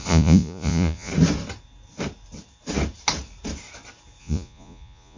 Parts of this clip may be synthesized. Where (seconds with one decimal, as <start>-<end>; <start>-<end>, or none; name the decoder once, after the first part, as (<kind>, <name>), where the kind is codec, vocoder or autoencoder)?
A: 0.0-1.1 (vocoder, Vocos); 4.2-5.2

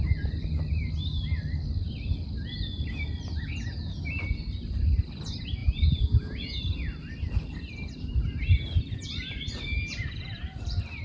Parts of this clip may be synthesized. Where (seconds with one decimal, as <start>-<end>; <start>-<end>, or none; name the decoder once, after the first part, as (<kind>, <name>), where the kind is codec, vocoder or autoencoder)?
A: 5.6-6.6 (vocoder, Vocos)

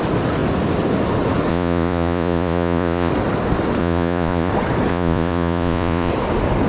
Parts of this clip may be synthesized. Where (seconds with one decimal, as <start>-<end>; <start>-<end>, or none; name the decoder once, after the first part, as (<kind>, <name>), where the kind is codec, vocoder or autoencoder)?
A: 1.5-3.1 (vocoder, Vocos); 3.8-4.5; 4.9-6.1